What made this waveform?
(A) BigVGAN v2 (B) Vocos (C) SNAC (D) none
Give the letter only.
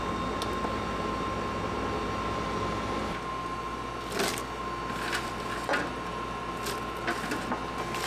D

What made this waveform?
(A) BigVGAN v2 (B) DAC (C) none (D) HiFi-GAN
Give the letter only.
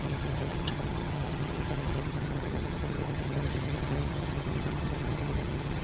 D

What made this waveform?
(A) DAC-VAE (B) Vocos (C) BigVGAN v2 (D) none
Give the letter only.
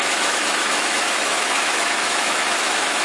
A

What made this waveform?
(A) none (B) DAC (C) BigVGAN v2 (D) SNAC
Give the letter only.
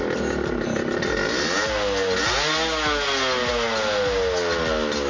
A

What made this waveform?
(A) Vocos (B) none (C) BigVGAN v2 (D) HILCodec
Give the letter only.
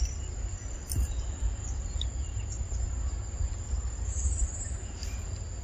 C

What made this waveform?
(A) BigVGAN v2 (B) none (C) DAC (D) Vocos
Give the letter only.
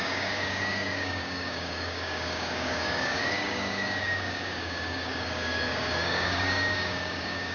C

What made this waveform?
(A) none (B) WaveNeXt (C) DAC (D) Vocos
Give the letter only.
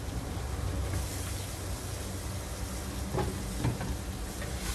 A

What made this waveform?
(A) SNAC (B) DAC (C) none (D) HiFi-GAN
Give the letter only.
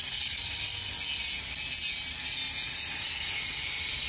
C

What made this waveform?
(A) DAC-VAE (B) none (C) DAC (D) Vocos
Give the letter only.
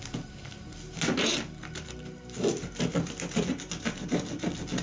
B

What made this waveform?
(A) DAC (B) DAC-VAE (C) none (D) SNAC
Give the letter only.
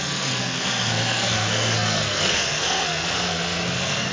D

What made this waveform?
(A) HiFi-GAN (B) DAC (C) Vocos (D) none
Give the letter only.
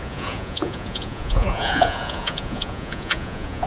C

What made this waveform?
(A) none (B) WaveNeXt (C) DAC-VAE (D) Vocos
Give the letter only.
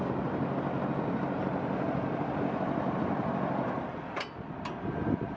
A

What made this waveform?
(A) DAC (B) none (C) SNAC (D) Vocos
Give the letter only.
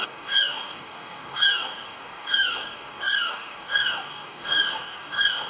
A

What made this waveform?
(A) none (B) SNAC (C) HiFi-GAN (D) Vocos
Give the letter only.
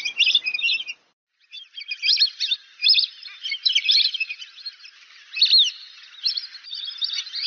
A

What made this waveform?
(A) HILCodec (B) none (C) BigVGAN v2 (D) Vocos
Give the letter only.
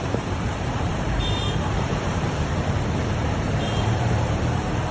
C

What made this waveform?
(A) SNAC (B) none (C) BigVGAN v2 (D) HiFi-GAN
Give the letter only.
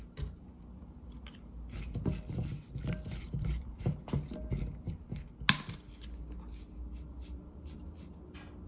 B